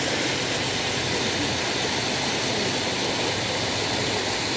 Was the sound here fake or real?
real